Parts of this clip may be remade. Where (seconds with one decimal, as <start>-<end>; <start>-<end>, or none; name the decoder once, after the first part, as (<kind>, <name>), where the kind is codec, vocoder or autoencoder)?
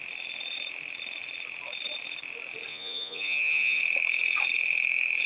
2.7-3.8 (vocoder, Vocos)